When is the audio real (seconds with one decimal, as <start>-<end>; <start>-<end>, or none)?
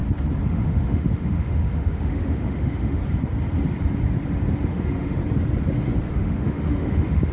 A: 0.0-0.5; 3.0-4.7; 5.2-6.1